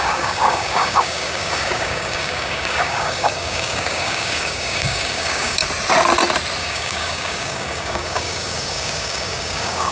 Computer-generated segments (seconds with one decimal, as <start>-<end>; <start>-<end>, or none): 0.0-5.6; 6.6-9.9